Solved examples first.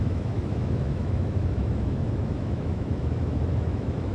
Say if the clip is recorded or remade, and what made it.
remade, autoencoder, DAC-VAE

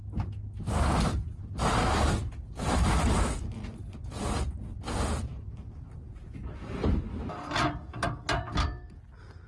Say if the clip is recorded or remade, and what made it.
recorded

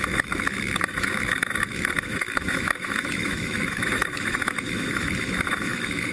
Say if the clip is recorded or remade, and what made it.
remade, autoencoder, DAC-VAE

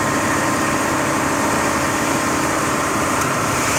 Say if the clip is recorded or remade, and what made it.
remade, vocoder, BigVGAN v2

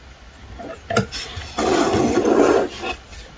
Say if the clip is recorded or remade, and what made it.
recorded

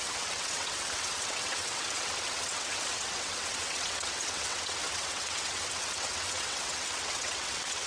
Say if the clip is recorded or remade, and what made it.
remade, vocoder, WaveNeXt